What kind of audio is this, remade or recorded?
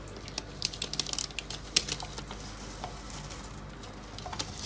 recorded